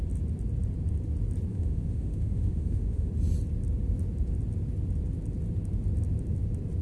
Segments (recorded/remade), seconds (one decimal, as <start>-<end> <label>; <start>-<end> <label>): 0.0-1.5 recorded; 1.5-3.1 remade; 3.1-6.8 recorded